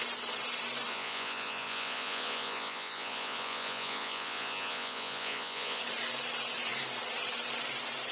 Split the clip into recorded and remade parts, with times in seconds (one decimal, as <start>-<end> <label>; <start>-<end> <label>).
0.0-0.9 recorded; 0.9-5.8 remade; 5.8-8.1 recorded